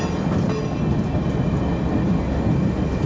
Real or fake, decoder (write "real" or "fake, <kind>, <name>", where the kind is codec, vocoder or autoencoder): real